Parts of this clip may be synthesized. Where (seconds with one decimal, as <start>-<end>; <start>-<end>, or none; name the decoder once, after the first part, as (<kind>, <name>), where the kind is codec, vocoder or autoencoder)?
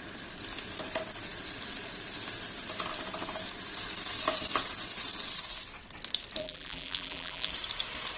6.4-7.5 (vocoder, BigVGAN v2)